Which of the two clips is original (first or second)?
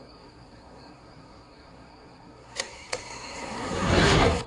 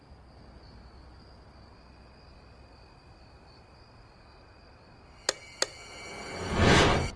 second